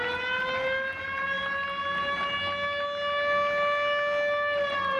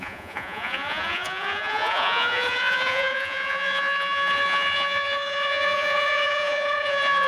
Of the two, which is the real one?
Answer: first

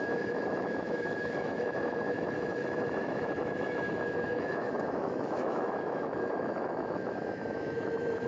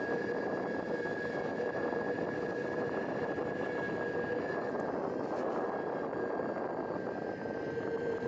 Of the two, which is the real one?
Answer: second